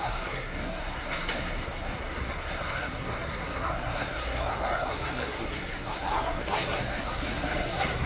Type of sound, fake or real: fake